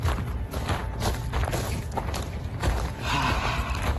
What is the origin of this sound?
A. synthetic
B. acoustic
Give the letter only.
B